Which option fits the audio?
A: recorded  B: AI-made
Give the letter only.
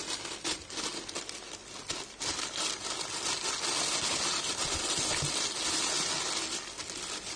A